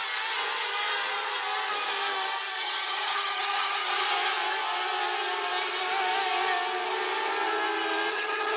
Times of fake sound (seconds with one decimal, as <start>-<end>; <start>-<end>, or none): 2.6-3.9; 8.1-8.6